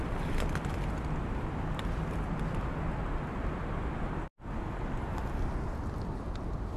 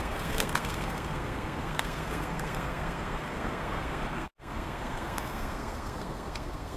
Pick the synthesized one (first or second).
second